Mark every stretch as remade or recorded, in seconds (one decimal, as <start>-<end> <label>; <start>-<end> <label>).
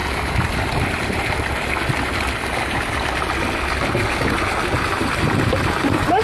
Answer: 0.0-6.2 recorded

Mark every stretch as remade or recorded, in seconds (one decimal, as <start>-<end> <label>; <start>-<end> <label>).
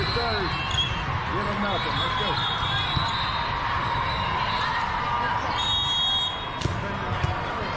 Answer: 0.0-7.8 recorded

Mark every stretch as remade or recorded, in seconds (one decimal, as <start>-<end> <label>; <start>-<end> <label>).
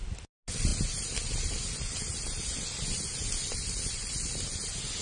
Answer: 0.0-5.0 recorded